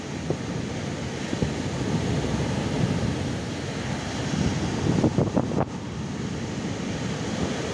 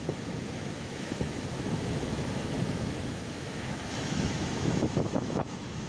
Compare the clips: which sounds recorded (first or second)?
first